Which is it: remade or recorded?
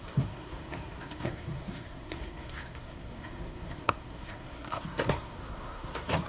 remade